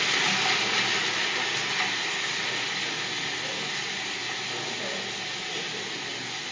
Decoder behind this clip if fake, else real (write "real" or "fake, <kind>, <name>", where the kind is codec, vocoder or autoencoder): real